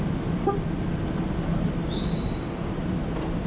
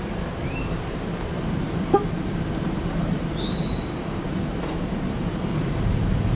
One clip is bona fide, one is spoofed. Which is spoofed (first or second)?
second